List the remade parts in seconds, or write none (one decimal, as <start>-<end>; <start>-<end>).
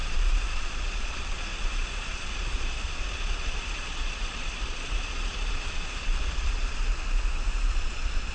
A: 0.0-6.9; 7.7-8.3